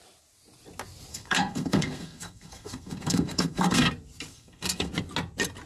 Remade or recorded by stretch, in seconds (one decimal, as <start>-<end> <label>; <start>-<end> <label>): 0.0-1.1 recorded; 1.1-3.9 remade; 3.9-4.3 recorded; 4.3-4.9 remade; 4.9-5.7 recorded